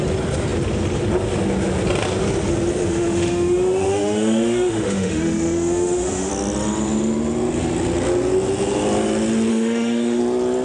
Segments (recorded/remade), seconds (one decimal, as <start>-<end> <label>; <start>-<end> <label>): 0.0-2.9 recorded; 2.9-6.3 remade; 6.3-9.5 recorded; 9.5-10.2 remade; 10.2-10.6 recorded